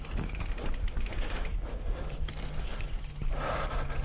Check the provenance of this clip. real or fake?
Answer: real